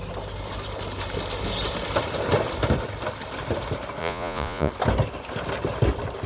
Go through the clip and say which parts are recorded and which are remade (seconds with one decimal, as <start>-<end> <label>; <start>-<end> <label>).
0.0-4.0 recorded; 4.0-4.7 remade; 4.7-6.3 recorded